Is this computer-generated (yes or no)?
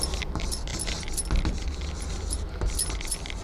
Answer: no